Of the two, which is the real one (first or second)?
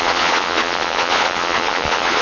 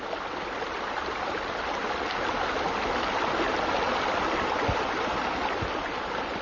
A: second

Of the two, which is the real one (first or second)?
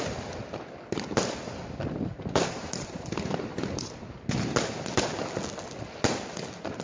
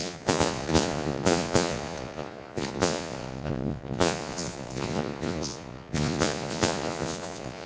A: first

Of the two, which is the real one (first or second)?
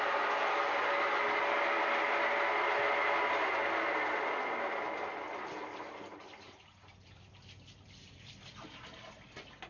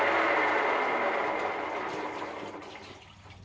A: first